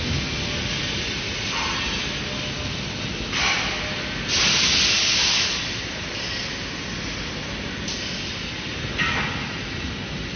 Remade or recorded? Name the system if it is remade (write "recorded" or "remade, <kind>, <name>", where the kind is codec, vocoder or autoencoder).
recorded